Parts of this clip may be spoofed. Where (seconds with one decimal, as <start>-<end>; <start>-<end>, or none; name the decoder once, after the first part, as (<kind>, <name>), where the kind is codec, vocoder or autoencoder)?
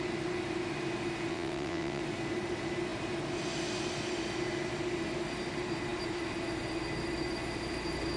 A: 1.3-2.0 (vocoder, WaveNeXt)